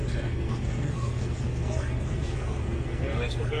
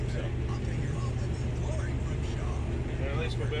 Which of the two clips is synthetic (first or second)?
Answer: first